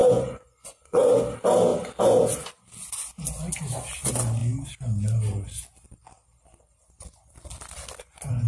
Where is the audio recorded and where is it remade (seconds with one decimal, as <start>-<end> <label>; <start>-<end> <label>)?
0.0-1.2 remade; 1.2-8.5 recorded